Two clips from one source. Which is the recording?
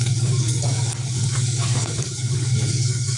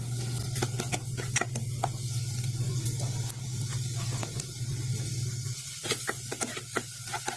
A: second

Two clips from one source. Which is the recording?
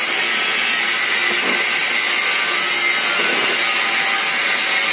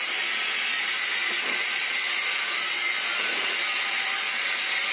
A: first